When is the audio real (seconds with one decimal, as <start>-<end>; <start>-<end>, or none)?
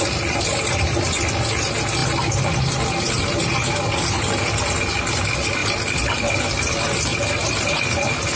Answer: 0.0-8.4